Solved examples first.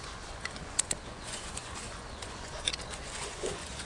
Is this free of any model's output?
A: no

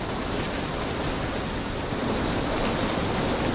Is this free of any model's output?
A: yes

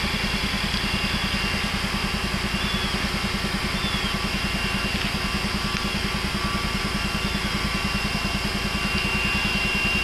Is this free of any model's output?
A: yes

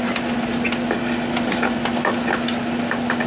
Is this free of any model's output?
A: yes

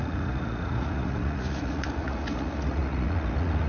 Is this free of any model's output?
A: no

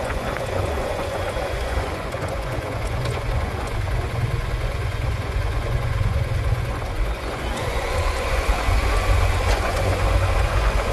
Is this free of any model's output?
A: no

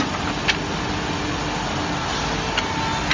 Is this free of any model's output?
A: yes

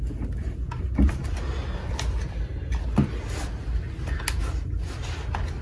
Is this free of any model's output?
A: yes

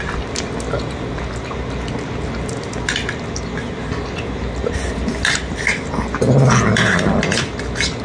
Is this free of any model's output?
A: yes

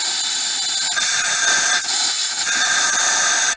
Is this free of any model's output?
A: yes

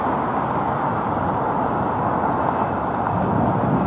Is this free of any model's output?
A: yes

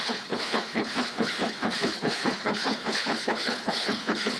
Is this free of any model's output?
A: no